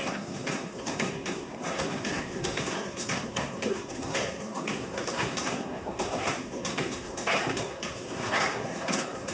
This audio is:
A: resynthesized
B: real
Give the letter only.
A